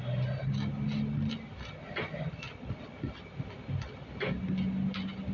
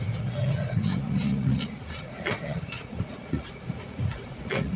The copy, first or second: second